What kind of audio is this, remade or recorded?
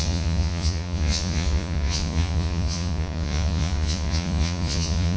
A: remade